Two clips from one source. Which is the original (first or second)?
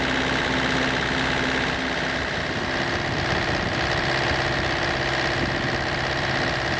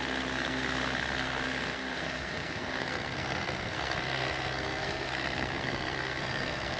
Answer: first